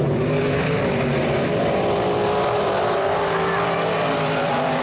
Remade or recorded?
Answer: remade